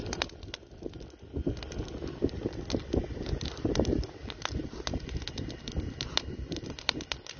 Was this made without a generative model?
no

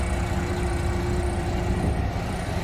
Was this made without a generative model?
yes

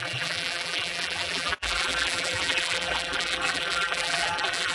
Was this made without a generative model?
no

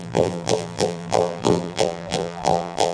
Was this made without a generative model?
no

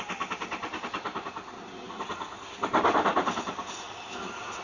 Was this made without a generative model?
yes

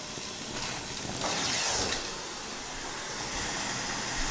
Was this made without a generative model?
yes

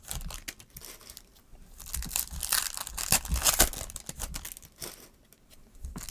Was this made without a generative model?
yes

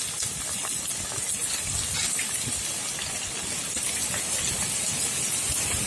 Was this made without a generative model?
yes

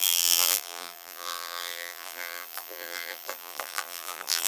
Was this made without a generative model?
no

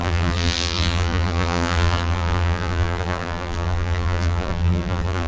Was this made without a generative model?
no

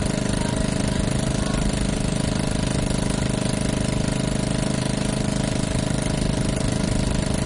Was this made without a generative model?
yes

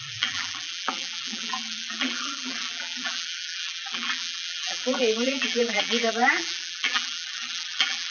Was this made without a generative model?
no